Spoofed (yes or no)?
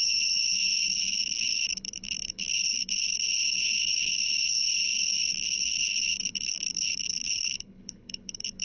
yes